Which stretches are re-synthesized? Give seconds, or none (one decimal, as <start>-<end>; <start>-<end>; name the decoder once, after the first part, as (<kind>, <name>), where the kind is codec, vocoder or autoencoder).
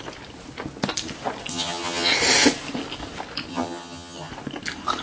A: 1.5-2.1 (vocoder, HiFi-GAN); 3.5-4.3